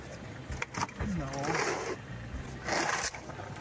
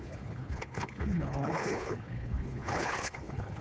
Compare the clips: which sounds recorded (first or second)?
first